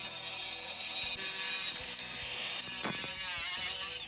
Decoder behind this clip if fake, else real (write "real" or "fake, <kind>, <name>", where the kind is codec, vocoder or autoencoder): real